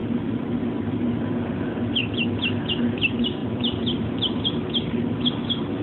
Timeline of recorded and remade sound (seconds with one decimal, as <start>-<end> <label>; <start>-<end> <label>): 0.0-3.4 recorded; 3.4-4.6 remade; 4.6-5.8 recorded